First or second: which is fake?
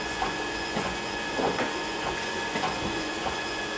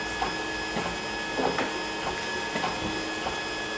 first